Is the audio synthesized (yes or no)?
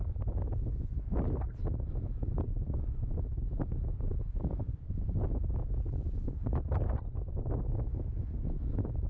no